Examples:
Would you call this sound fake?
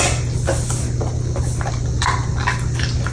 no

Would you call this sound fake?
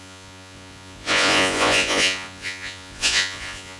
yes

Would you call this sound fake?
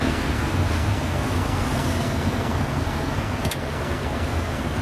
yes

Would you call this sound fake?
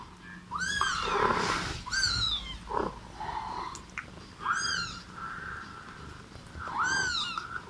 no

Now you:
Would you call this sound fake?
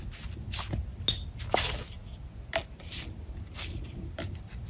no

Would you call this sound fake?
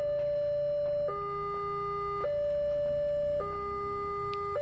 no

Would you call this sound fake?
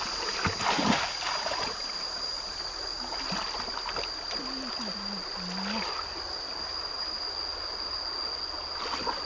no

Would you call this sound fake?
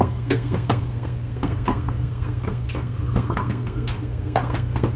yes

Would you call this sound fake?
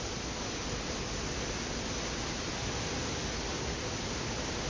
no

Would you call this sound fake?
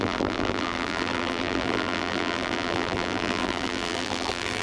yes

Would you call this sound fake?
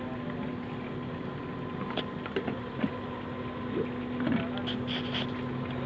no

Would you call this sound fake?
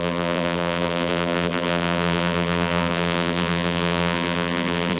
yes